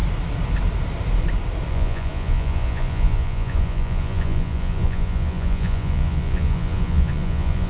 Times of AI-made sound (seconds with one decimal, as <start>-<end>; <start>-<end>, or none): 1.7-7.7